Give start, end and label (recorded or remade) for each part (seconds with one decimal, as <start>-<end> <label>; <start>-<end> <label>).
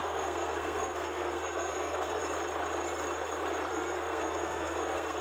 0.0-2.2 remade; 2.2-3.7 recorded; 3.7-5.2 remade